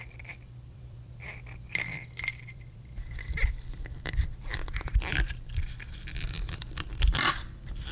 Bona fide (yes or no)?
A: no